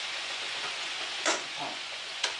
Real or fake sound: fake